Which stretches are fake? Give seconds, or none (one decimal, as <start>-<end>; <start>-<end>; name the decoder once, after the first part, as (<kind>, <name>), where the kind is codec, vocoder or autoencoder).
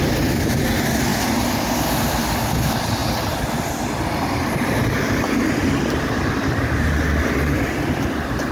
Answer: none